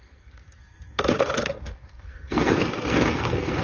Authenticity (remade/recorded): remade